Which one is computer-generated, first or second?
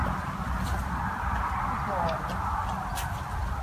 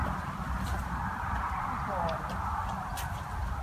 second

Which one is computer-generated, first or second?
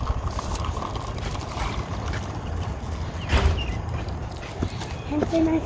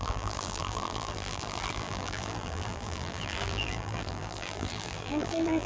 second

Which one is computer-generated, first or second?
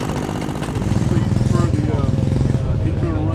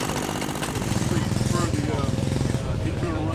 second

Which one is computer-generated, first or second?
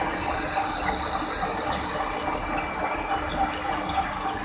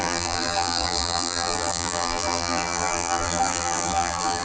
second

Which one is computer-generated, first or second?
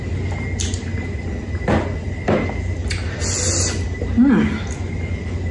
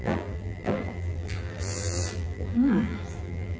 second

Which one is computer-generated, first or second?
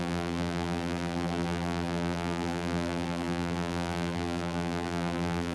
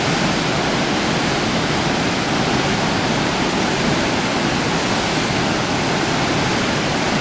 first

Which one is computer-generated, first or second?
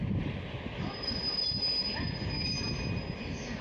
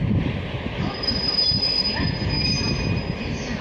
second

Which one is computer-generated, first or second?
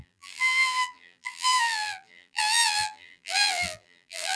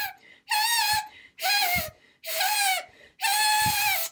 first